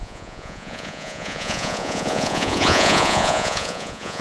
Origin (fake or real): fake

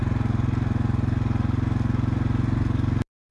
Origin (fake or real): real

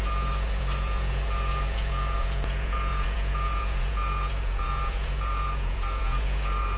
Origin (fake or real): fake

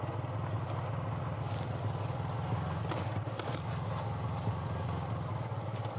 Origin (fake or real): real